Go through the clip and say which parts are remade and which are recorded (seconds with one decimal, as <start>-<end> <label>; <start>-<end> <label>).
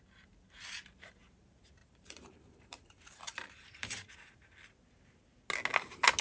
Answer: 0.0-1.8 recorded; 1.8-4.1 remade; 4.1-6.2 recorded